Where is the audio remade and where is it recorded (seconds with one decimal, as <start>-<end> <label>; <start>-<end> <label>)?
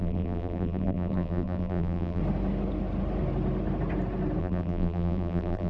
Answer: 0.0-2.2 remade; 2.2-4.4 recorded; 4.4-5.7 remade